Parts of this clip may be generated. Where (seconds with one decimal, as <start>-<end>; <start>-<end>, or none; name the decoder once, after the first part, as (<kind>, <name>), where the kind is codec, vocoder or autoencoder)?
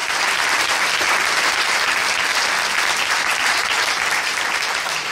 0.0-2.0 (vocoder, BigVGAN v2); 2.8-5.1